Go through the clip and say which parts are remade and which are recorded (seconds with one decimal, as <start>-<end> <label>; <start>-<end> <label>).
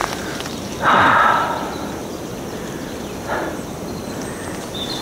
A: 0.0-5.0 recorded